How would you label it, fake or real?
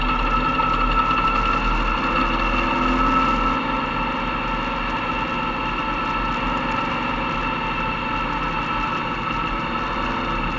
real